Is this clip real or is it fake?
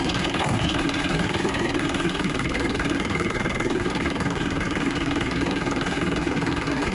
fake